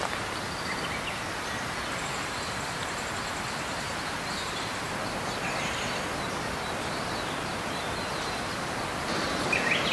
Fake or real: real